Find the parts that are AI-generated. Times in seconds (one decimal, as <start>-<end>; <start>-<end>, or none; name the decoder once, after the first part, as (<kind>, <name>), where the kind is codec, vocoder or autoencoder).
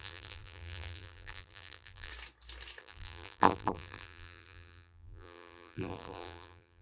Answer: 0.0-2.1 (vocoder, BigVGAN v2); 2.8-6.8